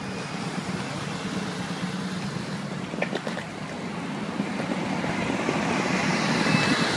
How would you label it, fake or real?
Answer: real